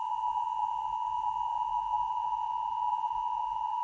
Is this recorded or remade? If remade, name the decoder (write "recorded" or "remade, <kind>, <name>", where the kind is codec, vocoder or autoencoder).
remade, vocoder, BigVGAN v2